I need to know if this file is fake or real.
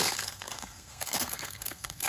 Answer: fake